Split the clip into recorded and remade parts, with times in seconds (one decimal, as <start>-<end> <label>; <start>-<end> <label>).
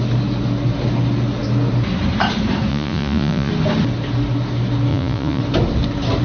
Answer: 0.0-2.7 recorded; 2.7-3.5 remade; 3.5-4.9 recorded; 4.9-5.4 remade; 5.4-6.2 recorded